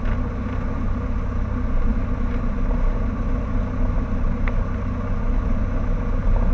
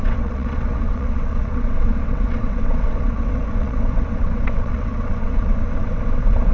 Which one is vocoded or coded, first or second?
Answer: second